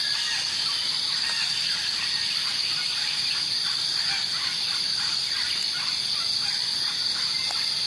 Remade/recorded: recorded